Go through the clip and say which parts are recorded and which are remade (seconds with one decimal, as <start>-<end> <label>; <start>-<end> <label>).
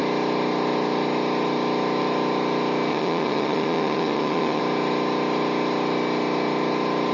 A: 0.0-2.9 recorded; 2.9-4.6 remade; 4.6-7.1 recorded